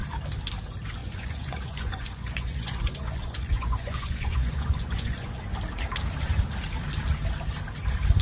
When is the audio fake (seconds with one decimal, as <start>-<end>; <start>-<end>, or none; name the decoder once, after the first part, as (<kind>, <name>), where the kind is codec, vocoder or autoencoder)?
1.0-5.4 (vocoder, Vocos)